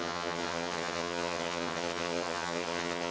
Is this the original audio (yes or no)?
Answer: no